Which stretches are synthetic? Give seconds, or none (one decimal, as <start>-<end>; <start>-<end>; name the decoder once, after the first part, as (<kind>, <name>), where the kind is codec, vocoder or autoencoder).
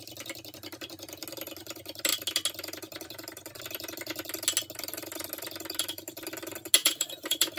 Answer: 6.8-7.6 (vocoder, BigVGAN v2)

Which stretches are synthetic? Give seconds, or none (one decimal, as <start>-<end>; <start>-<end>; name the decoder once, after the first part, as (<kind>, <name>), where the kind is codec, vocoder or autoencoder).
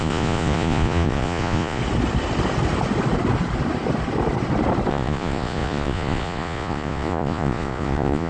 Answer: 0.0-1.8 (vocoder, Vocos); 4.9-8.3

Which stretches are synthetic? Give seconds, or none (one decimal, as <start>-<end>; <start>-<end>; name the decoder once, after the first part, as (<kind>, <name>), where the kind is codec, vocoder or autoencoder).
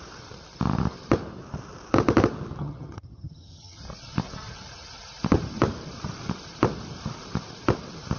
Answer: 2.6-3.8 (vocoder, HiFi-GAN)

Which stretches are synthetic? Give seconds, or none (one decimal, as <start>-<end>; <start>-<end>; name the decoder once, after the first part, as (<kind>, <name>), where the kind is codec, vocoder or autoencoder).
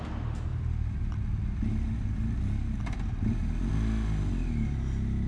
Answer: none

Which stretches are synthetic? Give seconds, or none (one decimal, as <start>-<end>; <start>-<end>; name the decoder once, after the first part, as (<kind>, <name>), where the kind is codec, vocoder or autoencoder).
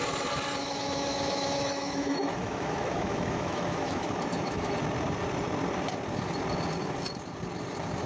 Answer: 0.6-4.7 (autoencoder, DAC-VAE)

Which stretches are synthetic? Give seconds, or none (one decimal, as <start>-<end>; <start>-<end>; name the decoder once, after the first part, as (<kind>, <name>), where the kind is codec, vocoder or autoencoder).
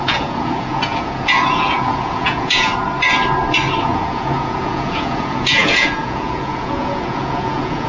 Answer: 0.0-2.7 (vocoder, Vocos); 3.8-7.9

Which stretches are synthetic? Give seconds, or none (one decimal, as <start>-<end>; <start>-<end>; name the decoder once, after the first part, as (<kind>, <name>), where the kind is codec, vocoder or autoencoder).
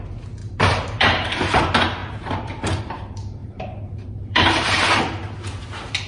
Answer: 0.4-1.6 (vocoder, BigVGAN v2); 3.4-5.0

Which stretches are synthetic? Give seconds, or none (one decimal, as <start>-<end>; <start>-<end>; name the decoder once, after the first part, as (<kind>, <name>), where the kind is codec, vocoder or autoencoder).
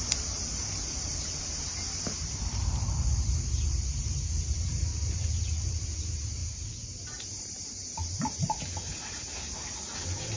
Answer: 0.0-10.4 (vocoder, BigVGAN v2)